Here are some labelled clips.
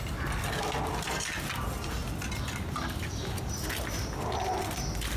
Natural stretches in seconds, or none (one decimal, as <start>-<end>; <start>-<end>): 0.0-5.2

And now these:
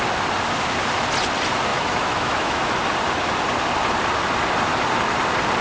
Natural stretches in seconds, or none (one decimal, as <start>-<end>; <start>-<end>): 0.0-1.7; 2.7-5.6

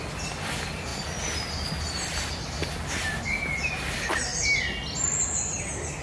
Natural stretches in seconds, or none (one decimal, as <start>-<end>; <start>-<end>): 0.0-6.0

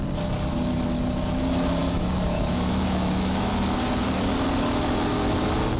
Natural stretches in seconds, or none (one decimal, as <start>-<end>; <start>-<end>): 0.0-1.8; 3.5-5.8